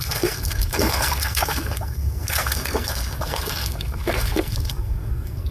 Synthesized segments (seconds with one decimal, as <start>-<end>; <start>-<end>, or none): 0.0-5.5